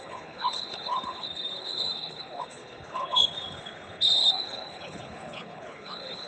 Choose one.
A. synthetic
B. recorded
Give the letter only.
A